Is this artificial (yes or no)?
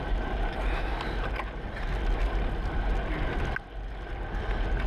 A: no